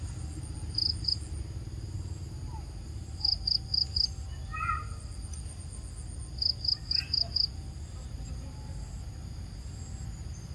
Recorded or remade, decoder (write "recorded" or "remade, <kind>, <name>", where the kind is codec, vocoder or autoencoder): recorded